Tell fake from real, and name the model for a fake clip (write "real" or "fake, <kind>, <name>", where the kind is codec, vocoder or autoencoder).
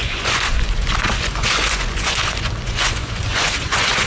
fake, vocoder, Vocos